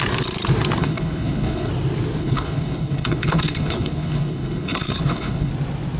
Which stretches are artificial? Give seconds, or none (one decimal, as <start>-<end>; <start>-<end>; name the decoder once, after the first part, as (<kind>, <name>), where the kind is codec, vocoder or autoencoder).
0.8-1.7 (codec, HILCodec); 2.2-5.5